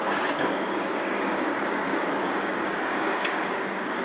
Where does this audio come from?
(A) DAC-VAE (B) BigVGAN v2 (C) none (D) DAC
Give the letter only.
D